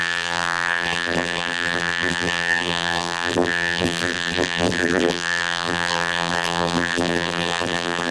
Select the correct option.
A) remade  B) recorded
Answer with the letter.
A